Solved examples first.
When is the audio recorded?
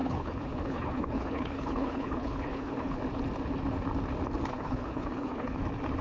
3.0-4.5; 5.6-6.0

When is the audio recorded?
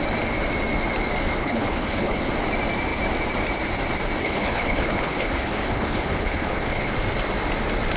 0.0-1.4; 2.3-4.2; 6.9-8.0